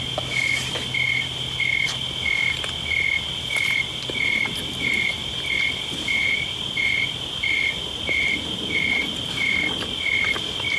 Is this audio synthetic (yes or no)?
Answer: no